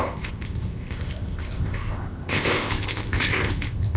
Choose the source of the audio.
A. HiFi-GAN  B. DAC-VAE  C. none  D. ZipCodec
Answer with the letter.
D